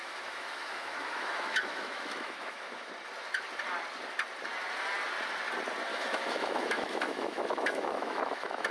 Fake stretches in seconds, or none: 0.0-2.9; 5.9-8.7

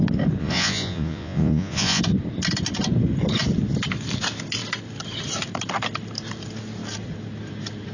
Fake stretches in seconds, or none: 0.4-2.0

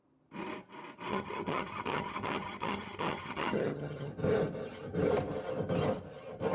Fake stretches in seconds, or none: 1.1-4.1

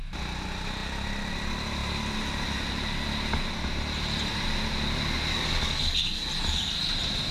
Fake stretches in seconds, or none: 5.3-6.3

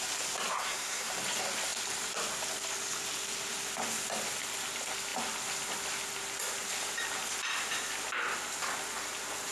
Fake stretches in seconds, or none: 0.6-1.1